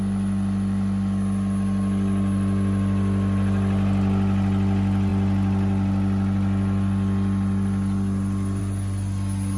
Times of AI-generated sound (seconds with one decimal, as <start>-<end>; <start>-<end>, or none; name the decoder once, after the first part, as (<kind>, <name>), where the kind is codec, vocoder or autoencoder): none